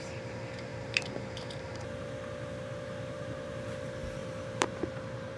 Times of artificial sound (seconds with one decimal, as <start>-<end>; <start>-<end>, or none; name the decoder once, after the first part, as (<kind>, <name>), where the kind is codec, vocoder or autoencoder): 0.0-5.4 (vocoder, BigVGAN v2)